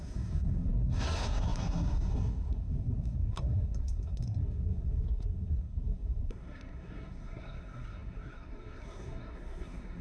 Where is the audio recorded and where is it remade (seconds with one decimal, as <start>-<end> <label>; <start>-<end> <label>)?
0.0-10.0 remade